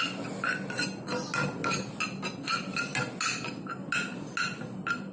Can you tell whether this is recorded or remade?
recorded